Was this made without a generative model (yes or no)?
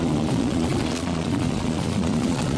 no